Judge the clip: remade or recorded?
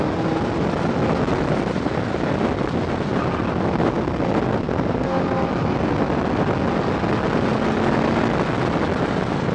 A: recorded